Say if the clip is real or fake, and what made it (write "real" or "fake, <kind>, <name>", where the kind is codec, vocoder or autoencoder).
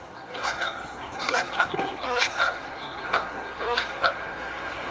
fake, codec, SNAC